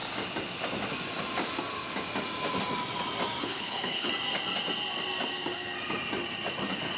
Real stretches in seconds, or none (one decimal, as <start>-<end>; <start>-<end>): 0.0-3.4; 4.1-7.0